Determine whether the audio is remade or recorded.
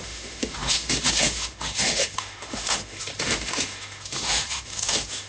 remade